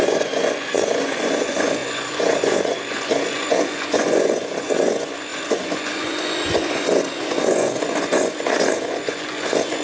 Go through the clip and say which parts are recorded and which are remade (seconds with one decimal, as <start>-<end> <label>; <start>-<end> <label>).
0.0-9.8 remade